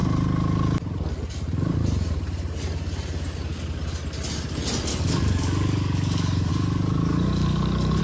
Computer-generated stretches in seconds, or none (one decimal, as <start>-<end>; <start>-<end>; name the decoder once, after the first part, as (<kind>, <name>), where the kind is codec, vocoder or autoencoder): 4.9-6.5 (codec, DAC); 7.1-8.0

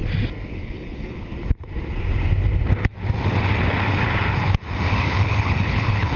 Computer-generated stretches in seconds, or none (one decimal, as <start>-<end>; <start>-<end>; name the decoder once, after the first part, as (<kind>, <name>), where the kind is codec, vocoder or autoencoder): 0.5-1.3 (codec, HILCodec); 4.9-6.2

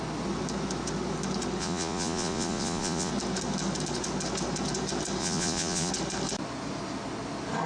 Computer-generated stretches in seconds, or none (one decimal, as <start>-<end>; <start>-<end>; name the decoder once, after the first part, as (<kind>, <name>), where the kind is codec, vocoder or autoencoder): 1.6-3.1 (vocoder, Vocos); 5.2-5.9

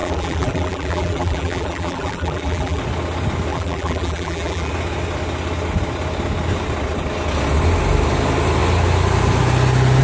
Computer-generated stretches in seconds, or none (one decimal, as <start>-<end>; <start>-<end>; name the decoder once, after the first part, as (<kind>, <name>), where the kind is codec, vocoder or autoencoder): 0.0-2.8 (vocoder, BigVGAN v2); 3.5-4.7

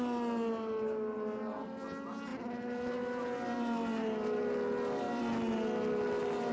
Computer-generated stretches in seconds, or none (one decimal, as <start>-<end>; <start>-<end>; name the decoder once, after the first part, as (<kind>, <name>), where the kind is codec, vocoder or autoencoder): none